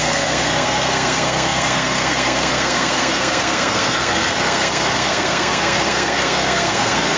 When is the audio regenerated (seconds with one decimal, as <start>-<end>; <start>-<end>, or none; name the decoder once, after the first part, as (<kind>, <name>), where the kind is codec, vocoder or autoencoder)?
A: 0.0-7.2 (codec, SNAC)